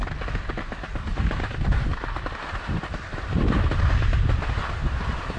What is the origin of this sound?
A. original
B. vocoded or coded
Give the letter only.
A